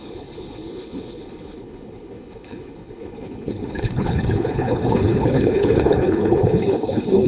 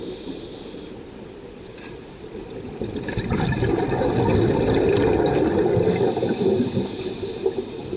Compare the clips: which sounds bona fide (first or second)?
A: second